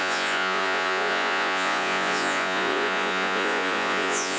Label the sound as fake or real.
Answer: fake